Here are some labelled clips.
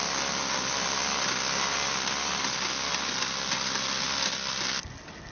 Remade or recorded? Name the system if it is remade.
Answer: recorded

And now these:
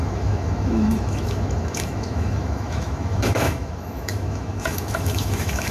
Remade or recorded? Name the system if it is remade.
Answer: remade, autoencoder, DAC-VAE